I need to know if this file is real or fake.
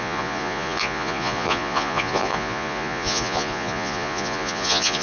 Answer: fake